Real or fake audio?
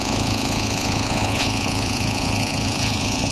fake